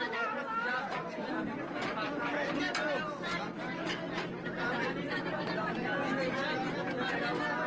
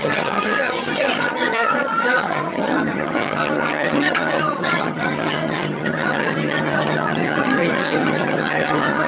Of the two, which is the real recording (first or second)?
first